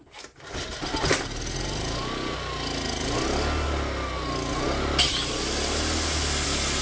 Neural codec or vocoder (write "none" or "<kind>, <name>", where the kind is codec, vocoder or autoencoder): none